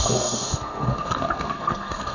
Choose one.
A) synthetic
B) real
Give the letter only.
A